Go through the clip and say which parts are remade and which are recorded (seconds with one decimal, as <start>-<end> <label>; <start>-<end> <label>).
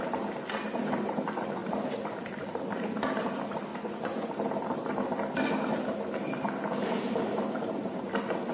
0.0-3.7 recorded; 3.7-4.3 remade; 4.3-8.5 recorded